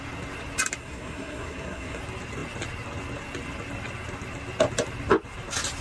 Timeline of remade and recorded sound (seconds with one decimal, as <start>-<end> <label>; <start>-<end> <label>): 0.0-0.8 recorded; 0.8-2.0 remade; 2.0-5.8 recorded